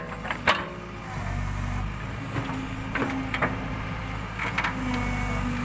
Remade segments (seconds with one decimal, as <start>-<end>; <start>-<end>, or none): 3.4-4.0